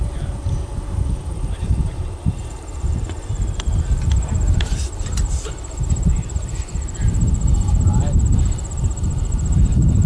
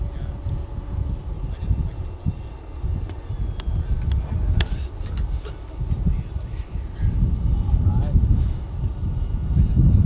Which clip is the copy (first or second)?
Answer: first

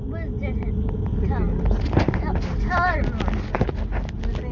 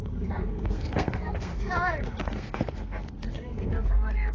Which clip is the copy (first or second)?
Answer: second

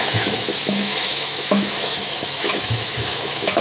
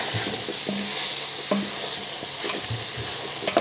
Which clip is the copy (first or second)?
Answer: first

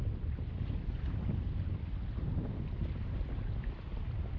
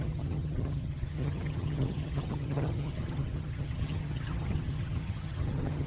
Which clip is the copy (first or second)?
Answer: second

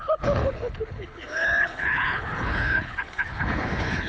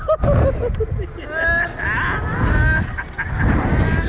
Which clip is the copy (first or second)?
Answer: first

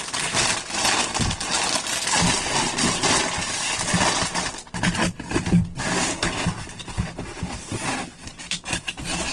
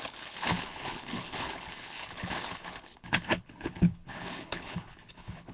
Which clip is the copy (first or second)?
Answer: second